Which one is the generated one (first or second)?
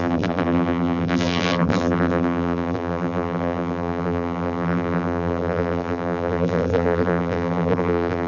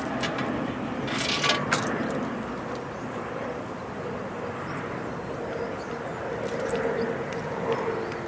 first